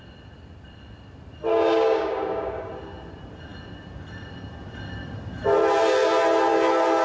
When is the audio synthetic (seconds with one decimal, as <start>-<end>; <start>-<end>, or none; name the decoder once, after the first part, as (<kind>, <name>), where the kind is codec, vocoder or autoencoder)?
1.5-2.7 (codec, DAC)